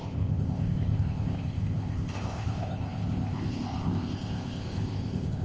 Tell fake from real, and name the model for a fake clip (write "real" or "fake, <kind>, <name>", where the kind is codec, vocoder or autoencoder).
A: fake, codec, ZipCodec